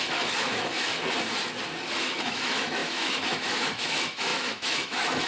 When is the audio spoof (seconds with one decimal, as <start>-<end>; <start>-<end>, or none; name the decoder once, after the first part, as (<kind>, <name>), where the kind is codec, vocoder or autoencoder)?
0.0-0.9 (autoencoder, DAC-VAE); 2.0-5.3